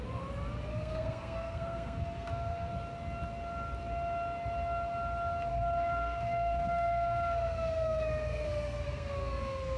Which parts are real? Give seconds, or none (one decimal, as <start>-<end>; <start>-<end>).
0.0-0.7; 2.7-5.5

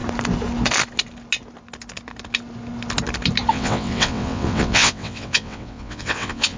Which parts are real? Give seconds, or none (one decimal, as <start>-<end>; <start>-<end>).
0.0-3.5

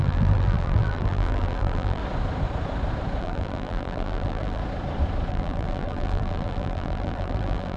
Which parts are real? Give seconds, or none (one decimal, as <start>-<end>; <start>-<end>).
2.0-3.2; 4.6-5.3